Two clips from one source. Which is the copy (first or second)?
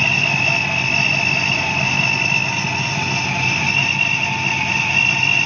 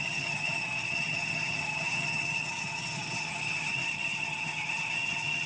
second